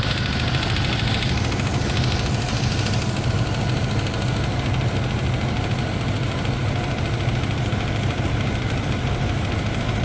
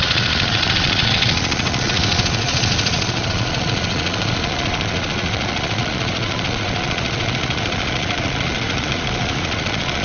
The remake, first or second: second